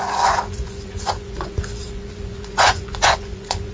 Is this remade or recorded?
remade